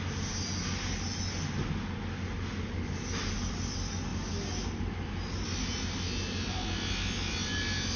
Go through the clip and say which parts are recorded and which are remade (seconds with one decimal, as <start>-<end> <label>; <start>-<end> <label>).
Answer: 0.0-8.0 recorded